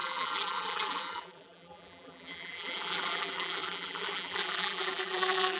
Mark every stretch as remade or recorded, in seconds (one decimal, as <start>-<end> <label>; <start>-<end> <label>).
0.0-5.6 remade